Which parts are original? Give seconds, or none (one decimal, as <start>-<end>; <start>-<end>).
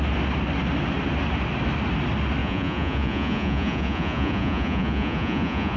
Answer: 0.0-2.4